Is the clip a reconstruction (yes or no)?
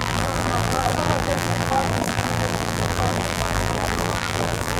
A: yes